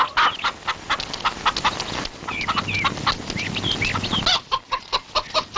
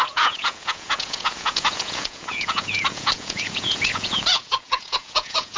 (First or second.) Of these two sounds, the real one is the first